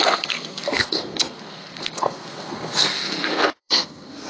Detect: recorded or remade remade